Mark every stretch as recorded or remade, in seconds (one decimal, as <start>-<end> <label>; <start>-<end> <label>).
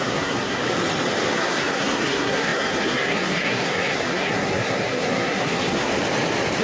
0.0-0.6 remade; 0.6-1.3 recorded; 1.3-5.9 remade; 5.9-6.6 recorded